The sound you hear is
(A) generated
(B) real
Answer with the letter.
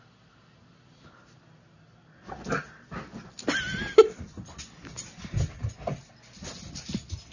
B